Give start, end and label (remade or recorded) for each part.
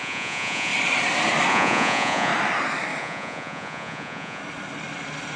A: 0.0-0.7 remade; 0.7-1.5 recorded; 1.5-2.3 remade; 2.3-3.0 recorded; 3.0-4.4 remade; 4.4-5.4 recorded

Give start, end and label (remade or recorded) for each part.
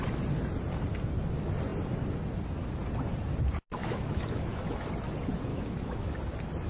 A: 0.0-3.8 recorded; 3.8-4.9 remade; 4.9-5.5 recorded; 5.5-6.2 remade; 6.2-6.7 recorded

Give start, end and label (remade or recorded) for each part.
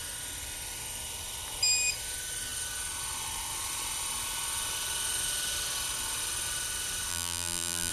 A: 0.0-7.1 recorded; 7.1-7.9 remade